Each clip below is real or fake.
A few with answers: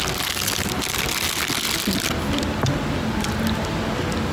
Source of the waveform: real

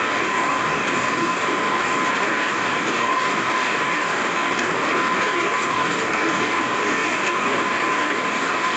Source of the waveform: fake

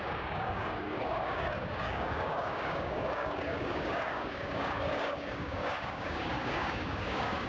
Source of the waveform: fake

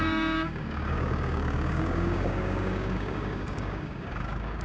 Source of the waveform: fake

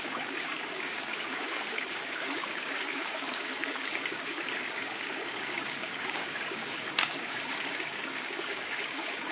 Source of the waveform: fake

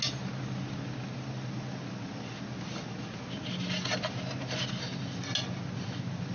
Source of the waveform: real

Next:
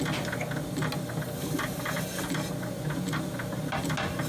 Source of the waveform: real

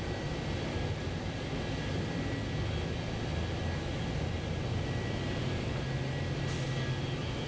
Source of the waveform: real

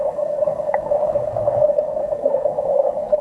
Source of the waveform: fake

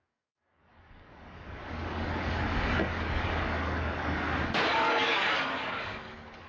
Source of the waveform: fake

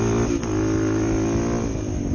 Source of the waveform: real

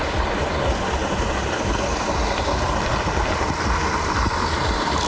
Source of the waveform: real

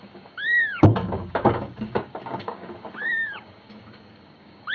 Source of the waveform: fake